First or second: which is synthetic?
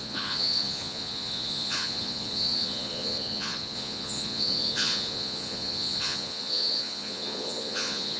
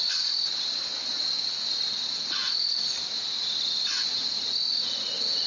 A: first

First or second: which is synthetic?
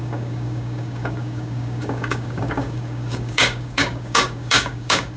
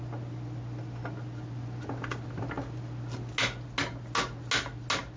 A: first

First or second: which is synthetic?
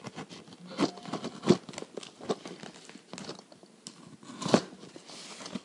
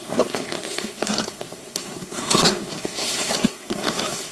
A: second